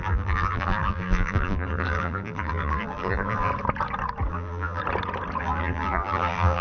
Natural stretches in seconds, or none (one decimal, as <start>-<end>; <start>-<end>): 3.5-4.3; 4.8-5.4